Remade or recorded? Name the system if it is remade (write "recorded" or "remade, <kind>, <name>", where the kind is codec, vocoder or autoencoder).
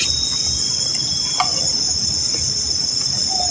recorded